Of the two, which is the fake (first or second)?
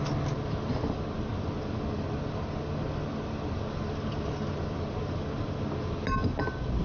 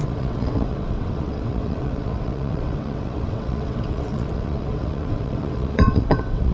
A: second